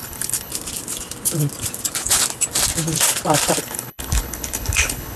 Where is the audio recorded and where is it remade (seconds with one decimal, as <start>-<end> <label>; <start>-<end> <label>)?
0.0-0.5 remade; 0.5-3.6 recorded; 3.6-5.2 remade